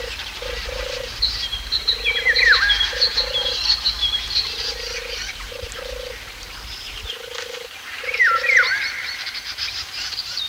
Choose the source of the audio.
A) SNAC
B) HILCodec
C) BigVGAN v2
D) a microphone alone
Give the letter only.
C